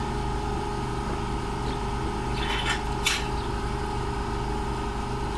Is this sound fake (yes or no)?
no